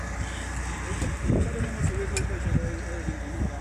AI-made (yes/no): no